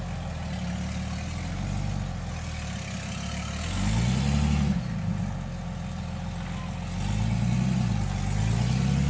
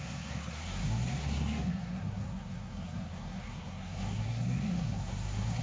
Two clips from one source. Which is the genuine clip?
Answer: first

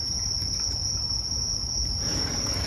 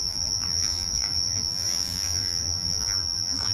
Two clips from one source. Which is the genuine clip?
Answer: first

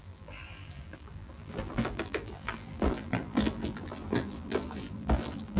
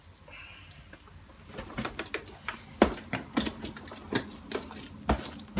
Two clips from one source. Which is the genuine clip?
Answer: second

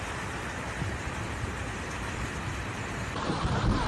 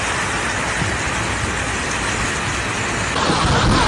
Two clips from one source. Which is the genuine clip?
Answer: second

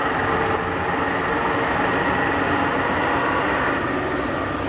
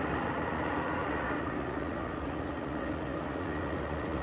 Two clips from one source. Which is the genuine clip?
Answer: first